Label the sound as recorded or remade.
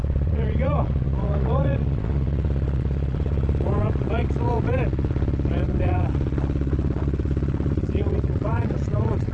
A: remade